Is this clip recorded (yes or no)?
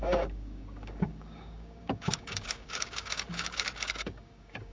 no